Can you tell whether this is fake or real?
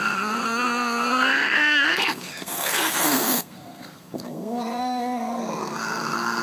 fake